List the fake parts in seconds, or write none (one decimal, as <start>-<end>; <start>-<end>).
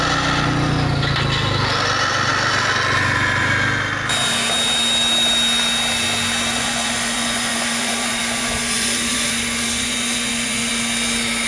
6.5-10.7